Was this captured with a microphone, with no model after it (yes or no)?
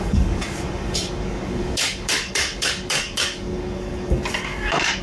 no